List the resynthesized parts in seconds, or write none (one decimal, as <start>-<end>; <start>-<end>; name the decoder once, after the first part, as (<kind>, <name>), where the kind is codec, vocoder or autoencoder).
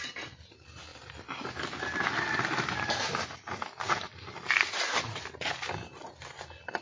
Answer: none